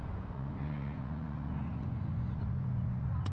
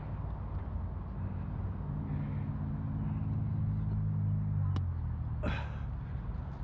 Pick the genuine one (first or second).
second